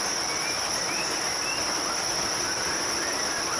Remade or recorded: recorded